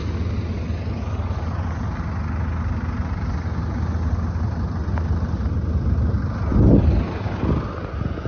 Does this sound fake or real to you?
real